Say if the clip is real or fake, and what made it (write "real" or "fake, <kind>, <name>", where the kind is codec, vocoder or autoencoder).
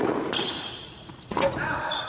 fake, vocoder, Vocos